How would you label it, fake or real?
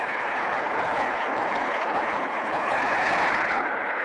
fake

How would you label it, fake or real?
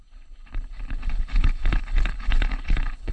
fake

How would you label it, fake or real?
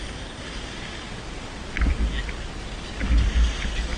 real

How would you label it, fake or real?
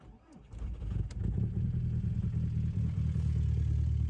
real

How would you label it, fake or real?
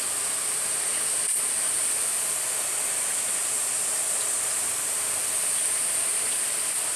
real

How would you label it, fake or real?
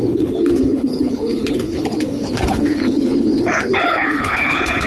fake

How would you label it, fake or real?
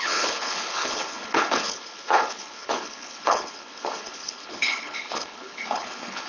fake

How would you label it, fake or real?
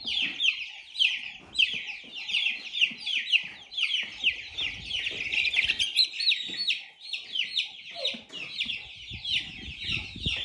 real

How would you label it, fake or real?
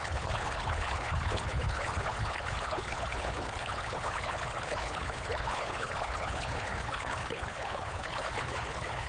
fake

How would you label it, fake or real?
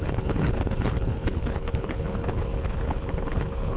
fake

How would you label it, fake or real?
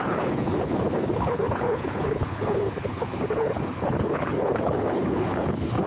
fake